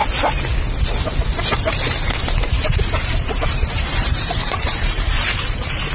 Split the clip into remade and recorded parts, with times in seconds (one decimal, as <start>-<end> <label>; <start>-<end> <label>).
0.0-1.4 recorded; 1.4-5.9 remade